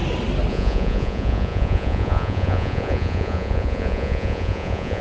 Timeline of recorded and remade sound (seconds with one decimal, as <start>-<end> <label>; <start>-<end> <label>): 0.0-0.5 recorded; 0.5-5.0 remade